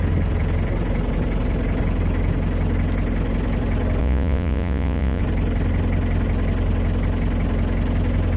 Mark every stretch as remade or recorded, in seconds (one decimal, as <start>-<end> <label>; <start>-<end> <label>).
0.0-4.0 recorded; 4.0-5.2 remade; 5.2-8.4 recorded